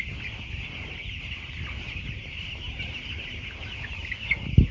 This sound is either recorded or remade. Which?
recorded